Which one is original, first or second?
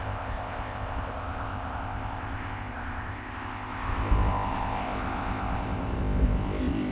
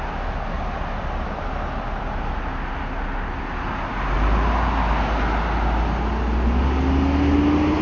second